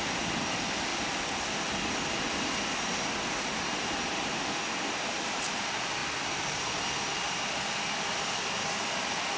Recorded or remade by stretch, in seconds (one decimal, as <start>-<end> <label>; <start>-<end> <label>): 0.0-9.4 recorded